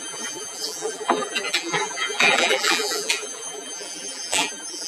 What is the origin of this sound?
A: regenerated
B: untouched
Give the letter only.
A